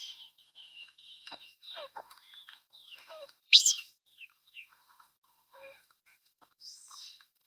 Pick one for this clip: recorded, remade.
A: remade